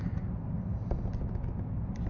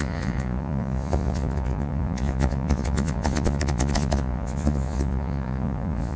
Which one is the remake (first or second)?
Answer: second